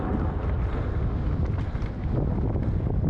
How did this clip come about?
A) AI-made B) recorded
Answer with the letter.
B